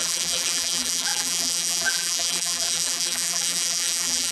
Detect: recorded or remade remade